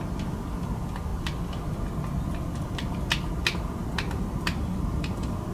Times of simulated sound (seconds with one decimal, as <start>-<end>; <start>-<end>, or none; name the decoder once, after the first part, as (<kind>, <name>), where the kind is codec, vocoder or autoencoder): none